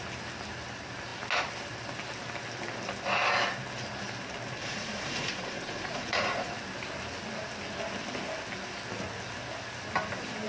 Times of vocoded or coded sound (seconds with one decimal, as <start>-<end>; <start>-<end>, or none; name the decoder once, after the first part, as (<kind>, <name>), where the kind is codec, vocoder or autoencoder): 4.6-6.5 (vocoder, Vocos)

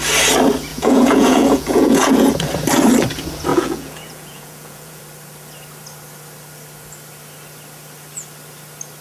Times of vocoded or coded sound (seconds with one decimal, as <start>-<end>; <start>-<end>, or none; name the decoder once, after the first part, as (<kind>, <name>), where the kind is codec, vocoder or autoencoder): 0.7-2.3 (vocoder, Vocos); 3.5-5.0

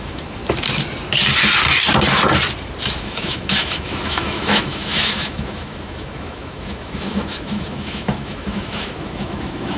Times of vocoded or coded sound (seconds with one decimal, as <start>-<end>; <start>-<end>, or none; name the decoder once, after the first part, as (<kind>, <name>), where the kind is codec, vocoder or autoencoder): 0.0-0.4 (autoencoder, DAC-VAE); 3.0-9.8

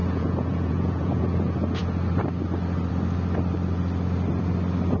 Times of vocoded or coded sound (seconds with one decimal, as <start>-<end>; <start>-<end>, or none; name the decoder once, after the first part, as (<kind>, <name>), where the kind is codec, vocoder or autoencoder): 0.0-1.4 (vocoder, Vocos)

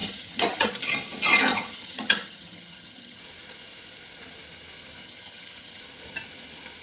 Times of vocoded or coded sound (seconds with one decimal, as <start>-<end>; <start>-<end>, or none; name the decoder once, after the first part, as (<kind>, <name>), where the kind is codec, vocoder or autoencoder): 0.0-0.7 (vocoder, HiFi-GAN); 1.5-3.2; 5.0-5.8